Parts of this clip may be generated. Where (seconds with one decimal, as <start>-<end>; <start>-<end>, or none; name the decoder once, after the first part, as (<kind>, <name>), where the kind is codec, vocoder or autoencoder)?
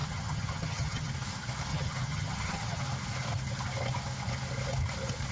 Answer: 0.0-1.1 (vocoder, HiFi-GAN); 1.7-2.8